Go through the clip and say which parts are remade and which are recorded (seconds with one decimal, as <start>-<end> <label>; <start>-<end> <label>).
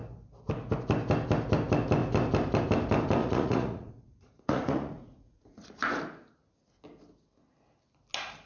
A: 0.0-3.2 recorded; 3.2-6.0 remade; 6.0-8.5 recorded